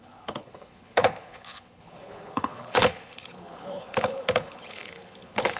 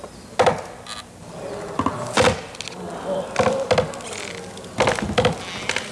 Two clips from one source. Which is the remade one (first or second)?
first